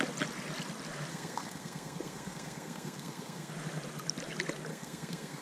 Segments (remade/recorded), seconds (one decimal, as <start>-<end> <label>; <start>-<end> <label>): 0.0-1.1 recorded; 1.1-3.5 remade; 3.5-4.7 recorded; 4.7-5.4 remade